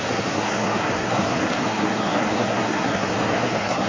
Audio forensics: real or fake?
fake